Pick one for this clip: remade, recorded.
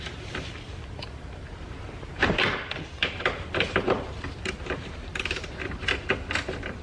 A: remade